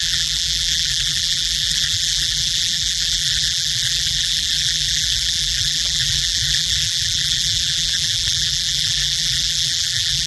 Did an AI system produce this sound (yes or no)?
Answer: yes